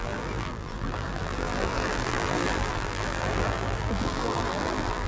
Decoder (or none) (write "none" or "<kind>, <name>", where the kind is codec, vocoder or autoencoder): vocoder, BigVGAN v2